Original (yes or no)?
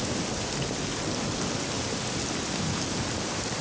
yes